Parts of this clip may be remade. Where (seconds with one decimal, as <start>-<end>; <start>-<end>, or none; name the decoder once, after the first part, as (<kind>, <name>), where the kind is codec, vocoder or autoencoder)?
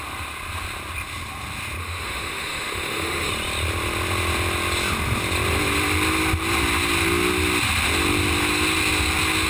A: 1.8-3.3 (autoencoder, DAC-VAE)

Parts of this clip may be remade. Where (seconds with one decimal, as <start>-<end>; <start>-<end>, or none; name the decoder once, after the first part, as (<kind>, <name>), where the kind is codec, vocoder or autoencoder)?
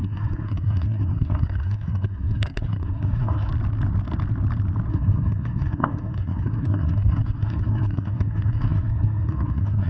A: 0.0-3.5 (codec, SNAC); 4.9-9.9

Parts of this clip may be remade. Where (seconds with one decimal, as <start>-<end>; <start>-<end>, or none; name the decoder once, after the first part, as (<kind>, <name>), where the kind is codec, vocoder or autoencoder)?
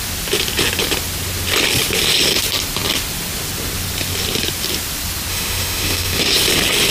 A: 5.3-6.3 (autoencoder, DAC-VAE)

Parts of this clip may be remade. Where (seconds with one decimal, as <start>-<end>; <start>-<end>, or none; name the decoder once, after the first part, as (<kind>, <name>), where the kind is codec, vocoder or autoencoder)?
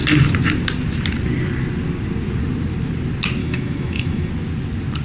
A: 3.4-4.3 (autoencoder, DAC-VAE)